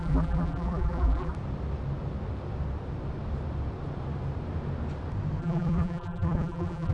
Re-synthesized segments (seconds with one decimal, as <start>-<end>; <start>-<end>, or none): 0.0-1.3; 5.4-6.9

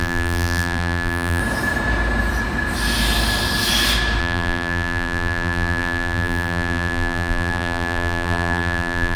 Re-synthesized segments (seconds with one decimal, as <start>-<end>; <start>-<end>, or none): 0.0-1.4; 4.2-9.2

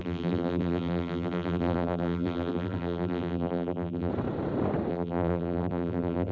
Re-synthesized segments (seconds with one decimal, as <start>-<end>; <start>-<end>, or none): 0.0-4.1; 4.9-6.3

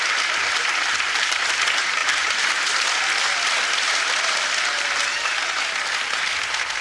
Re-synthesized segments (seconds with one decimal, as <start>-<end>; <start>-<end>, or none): 0.4-1.4; 2.0-2.8

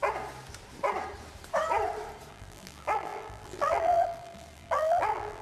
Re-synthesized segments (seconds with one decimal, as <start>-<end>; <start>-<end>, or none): 2.3-5.4

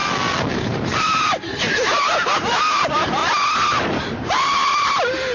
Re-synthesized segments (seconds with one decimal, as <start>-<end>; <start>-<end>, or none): 0.5-3.2; 3.8-5.3